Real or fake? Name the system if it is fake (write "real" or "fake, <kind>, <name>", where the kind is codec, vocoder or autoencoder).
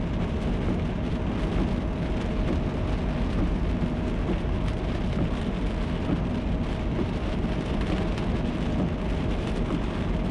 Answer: real